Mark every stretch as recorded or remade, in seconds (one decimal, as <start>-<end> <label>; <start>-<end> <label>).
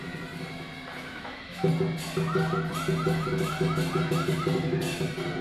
0.0-0.9 recorded; 0.9-1.7 remade; 1.7-5.4 recorded